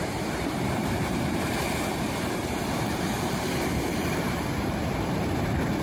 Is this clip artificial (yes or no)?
yes